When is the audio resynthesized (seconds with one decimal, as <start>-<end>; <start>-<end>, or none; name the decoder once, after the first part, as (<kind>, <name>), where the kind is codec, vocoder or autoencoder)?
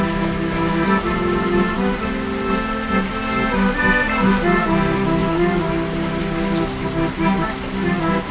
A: none